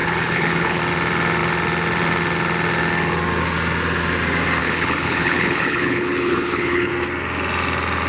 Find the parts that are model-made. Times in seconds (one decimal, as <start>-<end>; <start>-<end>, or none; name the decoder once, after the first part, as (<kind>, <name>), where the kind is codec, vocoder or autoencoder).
0.0-0.8 (codec, HILCodec); 4.6-6.9